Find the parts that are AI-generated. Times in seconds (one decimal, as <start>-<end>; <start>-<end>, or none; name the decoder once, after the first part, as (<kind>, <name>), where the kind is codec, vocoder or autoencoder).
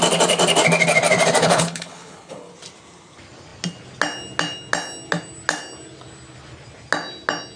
1.4-2.5 (codec, HILCodec)